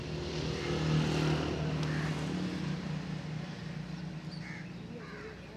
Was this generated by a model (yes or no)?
no